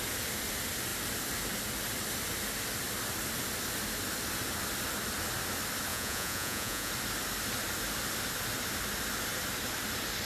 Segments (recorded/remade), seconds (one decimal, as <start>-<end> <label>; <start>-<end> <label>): 0.0-5.9 recorded; 5.9-6.9 remade; 6.9-10.3 recorded